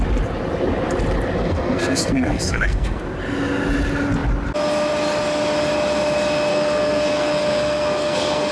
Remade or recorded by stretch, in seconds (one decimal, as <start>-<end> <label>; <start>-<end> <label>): 0.0-1.4 recorded; 1.4-3.0 remade; 3.0-6.5 recorded; 6.5-8.5 remade